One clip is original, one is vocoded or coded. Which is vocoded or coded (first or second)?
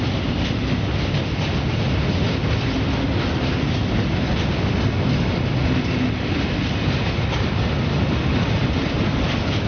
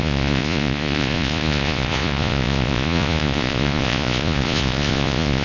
second